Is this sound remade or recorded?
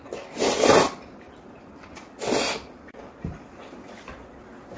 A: recorded